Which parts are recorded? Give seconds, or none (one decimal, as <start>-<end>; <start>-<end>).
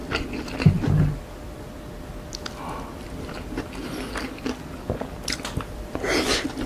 0.0-6.7